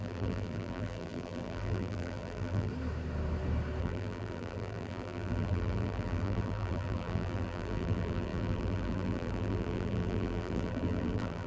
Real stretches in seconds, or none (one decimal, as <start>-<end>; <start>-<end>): 2.7-3.8